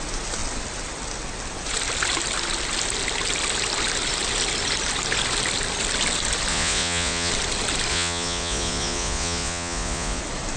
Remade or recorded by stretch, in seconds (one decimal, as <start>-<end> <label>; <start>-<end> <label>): 0.0-6.5 recorded; 6.5-7.3 remade; 7.3-7.9 recorded; 7.9-10.2 remade; 10.2-10.6 recorded